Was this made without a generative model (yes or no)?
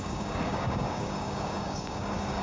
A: no